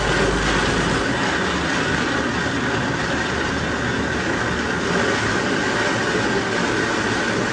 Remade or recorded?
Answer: recorded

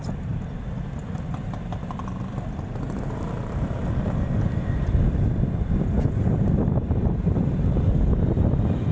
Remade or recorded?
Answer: recorded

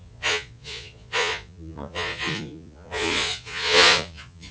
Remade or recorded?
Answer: remade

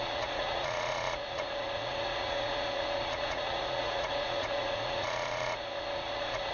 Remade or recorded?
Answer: remade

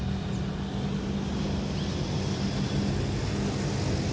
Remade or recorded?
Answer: recorded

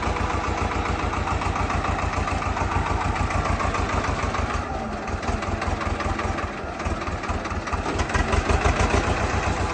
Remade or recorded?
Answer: recorded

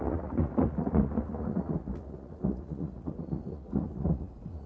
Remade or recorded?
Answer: remade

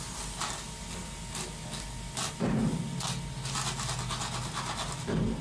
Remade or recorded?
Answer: recorded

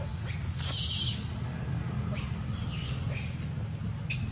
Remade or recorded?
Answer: recorded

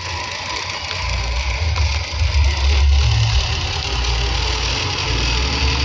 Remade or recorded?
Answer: recorded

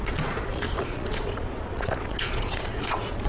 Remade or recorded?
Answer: remade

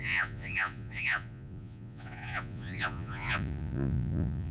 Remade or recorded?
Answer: remade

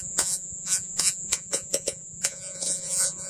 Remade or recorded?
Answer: remade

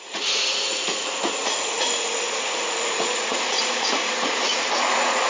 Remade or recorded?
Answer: remade